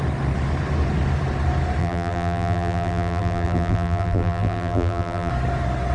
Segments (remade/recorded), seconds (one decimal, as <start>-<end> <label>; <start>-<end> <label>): 0.0-1.8 recorded; 1.8-5.3 remade; 5.3-5.9 recorded